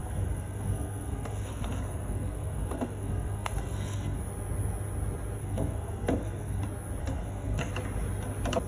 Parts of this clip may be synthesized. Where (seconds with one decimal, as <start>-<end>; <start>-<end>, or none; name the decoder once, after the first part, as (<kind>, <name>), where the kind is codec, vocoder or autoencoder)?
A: 0.0-4.2 (codec, SNAC); 5.4-6.6; 7.0-7.7